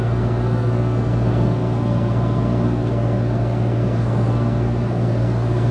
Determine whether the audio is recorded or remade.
remade